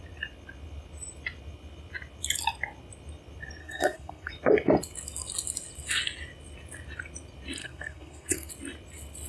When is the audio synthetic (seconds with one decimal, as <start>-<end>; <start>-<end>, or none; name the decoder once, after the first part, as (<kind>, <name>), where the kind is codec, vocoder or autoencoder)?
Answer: 3.6-4.3 (codec, SNAC); 7.6-8.5